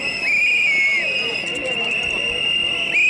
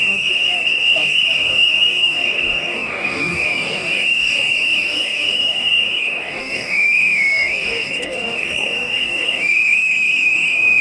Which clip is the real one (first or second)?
first